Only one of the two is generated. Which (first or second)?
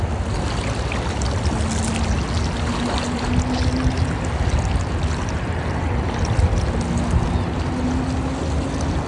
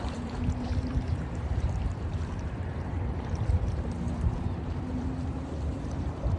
second